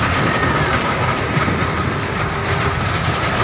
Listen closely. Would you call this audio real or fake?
real